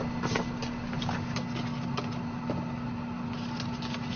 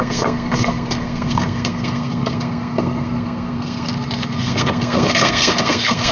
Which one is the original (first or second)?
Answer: first